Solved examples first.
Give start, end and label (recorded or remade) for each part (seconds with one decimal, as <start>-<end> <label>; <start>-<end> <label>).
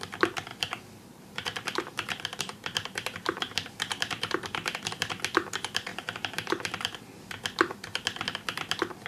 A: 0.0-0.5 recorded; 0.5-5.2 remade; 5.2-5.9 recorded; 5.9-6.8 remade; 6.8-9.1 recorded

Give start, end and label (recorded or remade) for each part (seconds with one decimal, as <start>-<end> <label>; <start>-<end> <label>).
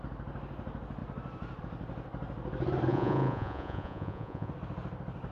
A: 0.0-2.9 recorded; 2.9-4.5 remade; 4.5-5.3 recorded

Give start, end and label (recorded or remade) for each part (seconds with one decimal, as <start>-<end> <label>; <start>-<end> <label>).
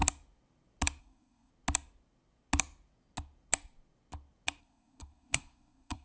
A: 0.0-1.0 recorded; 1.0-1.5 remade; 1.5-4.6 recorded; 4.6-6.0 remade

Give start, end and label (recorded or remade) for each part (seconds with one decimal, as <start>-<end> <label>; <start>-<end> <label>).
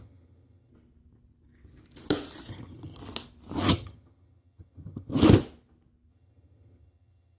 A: 0.0-0.7 remade; 0.7-2.5 recorded; 2.5-3.0 remade; 3.0-3.7 recorded; 3.7-5.1 remade; 5.1-6.1 recorded; 6.1-7.4 remade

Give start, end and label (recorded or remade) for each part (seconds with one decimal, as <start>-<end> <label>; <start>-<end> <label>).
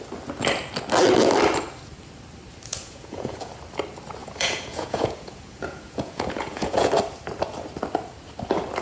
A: 0.0-2.7 recorded; 2.7-3.5 remade; 3.5-4.2 recorded; 4.2-6.9 remade; 6.9-8.8 recorded